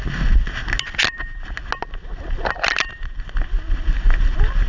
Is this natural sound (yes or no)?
yes